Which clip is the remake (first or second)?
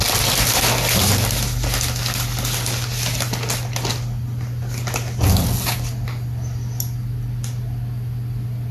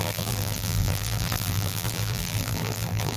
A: second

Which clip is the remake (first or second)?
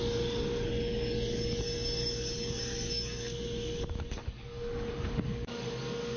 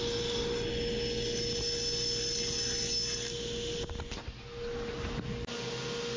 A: first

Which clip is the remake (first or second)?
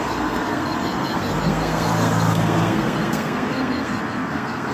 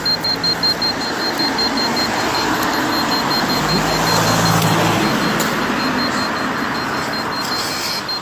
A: first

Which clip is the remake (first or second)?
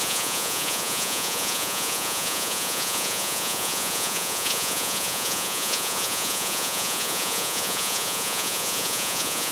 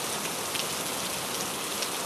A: first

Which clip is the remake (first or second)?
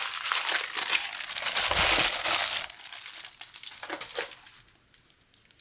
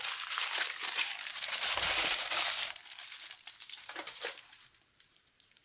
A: second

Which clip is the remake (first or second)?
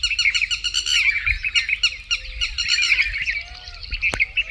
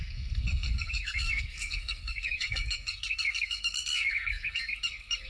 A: second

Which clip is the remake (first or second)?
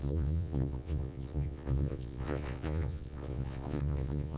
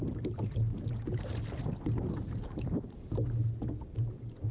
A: first